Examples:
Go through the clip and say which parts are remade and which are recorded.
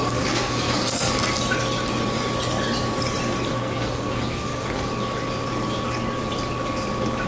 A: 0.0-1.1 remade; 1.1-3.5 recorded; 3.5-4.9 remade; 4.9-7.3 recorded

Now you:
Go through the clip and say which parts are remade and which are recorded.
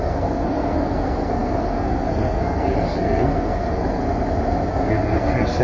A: 0.0-4.0 remade; 4.0-4.7 recorded; 4.7-5.6 remade